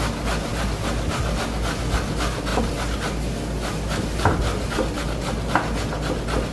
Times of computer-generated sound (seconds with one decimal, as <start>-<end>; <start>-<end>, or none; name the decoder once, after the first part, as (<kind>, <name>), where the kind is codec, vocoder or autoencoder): none

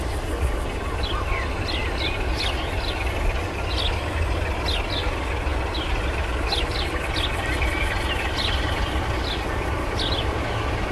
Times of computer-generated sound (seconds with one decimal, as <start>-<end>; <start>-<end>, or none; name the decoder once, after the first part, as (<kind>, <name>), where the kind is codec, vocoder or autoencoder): none

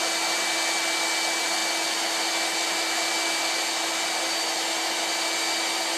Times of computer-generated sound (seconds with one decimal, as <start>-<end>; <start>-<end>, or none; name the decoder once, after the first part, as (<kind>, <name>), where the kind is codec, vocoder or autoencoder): none

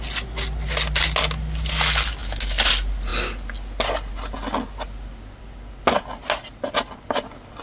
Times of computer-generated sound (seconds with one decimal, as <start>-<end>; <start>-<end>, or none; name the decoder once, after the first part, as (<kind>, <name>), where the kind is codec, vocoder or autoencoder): none

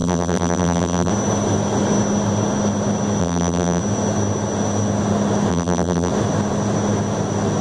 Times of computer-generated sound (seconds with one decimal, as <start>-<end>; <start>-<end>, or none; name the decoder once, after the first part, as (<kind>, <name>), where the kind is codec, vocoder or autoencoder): 0.0-1.1 (vocoder, BigVGAN v2); 3.2-3.8; 5.5-6.1